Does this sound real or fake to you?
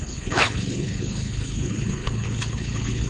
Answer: fake